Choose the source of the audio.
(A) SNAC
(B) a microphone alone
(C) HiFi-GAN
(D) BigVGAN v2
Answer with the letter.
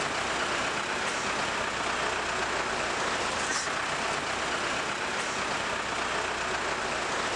B